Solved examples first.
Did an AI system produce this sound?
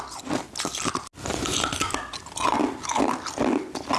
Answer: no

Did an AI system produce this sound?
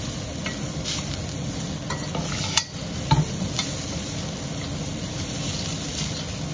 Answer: no